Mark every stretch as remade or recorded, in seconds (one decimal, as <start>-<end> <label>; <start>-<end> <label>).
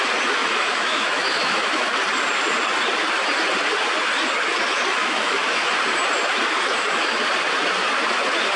0.0-0.4 recorded; 0.4-1.9 remade; 1.9-5.0 recorded; 5.0-5.7 remade; 5.7-8.6 recorded